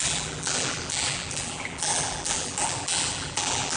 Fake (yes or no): yes